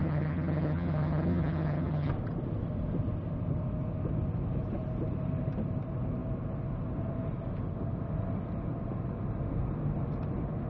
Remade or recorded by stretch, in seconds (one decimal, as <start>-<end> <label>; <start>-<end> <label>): 0.0-2.1 remade; 2.1-10.7 recorded